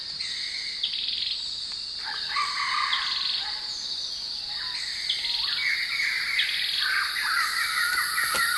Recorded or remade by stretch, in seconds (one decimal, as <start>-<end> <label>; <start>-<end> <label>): 0.0-3.4 recorded; 3.4-4.1 remade; 4.1-8.6 recorded

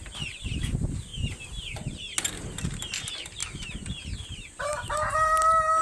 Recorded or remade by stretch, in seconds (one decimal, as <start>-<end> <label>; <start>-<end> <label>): 0.0-5.8 recorded

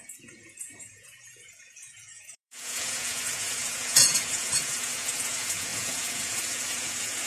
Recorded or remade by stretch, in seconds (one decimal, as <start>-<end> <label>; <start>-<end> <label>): 0.0-7.3 remade

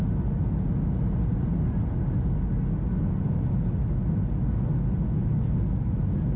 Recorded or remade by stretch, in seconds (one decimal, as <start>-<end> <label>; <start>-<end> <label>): 0.0-6.4 recorded